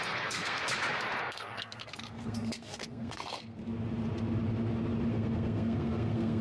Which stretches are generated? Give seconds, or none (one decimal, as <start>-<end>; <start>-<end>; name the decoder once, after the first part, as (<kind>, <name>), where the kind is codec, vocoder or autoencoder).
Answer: 0.0-0.6 (codec, SNAC); 1.2-3.6; 5.1-6.4

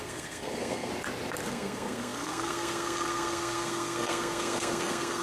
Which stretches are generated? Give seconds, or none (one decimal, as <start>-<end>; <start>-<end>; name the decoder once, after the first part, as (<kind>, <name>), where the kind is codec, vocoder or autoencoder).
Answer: 0.0-0.9 (codec, SNAC); 1.5-5.2

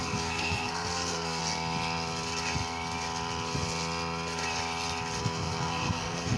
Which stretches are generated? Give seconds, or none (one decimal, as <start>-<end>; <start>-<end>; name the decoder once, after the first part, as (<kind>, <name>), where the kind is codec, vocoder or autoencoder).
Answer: 0.0-1.4 (codec, SNAC); 5.2-6.4

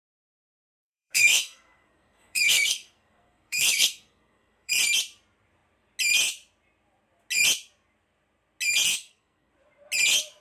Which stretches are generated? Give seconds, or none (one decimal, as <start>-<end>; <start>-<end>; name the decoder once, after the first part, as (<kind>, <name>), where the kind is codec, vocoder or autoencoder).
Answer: 0.4-4.7 (codec, SNAC); 8.9-9.5

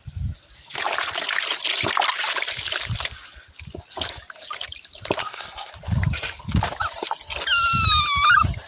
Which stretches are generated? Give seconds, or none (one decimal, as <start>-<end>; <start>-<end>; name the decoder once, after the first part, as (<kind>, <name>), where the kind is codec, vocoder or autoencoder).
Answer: 5.2-5.7 (codec, SNAC)

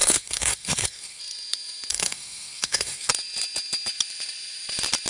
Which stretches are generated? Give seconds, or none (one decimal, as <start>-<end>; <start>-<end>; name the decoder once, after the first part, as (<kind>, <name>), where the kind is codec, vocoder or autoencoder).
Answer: 0.0-1.2 (codec, SNAC); 1.9-3.1

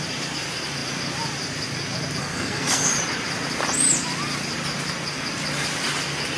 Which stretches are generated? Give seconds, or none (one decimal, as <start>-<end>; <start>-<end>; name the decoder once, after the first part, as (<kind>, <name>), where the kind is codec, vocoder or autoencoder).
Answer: 2.2-2.9 (codec, SNAC)